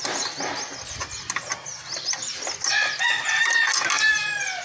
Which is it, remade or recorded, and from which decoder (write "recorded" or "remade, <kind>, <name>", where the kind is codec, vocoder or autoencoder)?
recorded